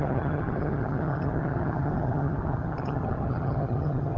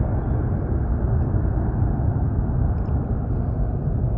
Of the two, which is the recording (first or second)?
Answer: second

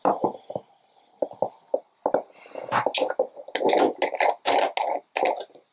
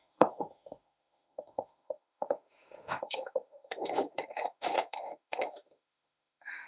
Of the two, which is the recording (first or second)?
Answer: first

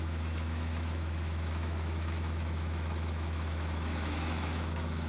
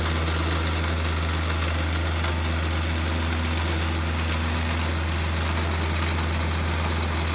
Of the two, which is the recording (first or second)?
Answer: second